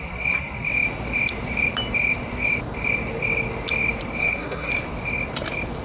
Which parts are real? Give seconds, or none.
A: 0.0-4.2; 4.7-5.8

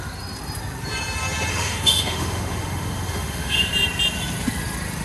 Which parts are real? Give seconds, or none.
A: 0.0-1.5; 3.7-5.0

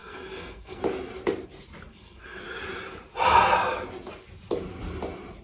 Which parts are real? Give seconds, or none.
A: 0.8-1.9; 2.4-5.4